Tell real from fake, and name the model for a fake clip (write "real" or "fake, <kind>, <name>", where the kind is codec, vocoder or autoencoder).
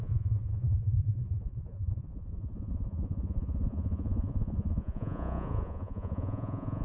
fake, vocoder, Vocos